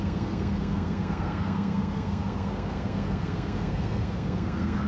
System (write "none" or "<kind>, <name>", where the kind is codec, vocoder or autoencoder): codec, SNAC